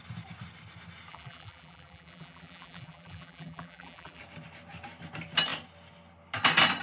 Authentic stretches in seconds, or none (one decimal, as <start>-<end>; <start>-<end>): 0.0-1.1; 4.2-6.8